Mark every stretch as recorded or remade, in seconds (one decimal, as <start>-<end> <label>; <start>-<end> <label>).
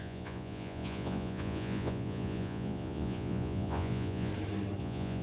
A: 0.0-4.3 remade; 4.3-4.8 recorded; 4.8-5.2 remade